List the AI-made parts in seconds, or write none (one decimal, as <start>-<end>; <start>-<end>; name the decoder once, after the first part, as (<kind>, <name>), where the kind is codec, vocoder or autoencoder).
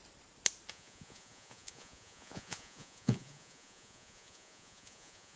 0.7-5.4 (vocoder, Vocos)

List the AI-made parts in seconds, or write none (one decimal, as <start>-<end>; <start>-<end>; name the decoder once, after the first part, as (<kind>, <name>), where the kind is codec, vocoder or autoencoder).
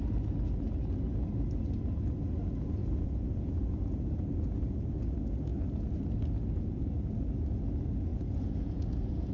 2.8-4.1 (vocoder, Vocos); 8.1-9.3